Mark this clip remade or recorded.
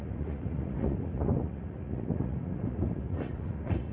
remade